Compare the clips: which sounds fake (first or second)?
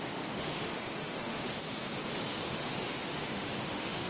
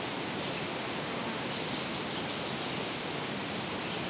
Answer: first